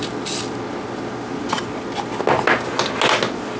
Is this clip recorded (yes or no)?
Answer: yes